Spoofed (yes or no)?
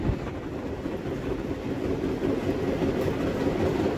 no